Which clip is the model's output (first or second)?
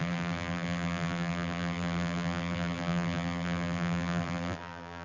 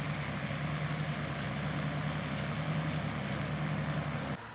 first